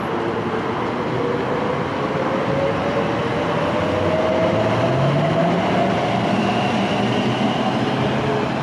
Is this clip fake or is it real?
real